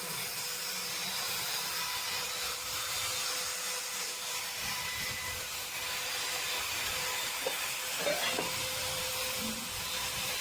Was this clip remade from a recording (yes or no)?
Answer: yes